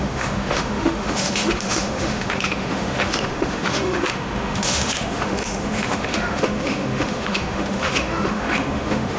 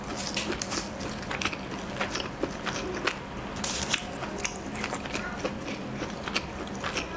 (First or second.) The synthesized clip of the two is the first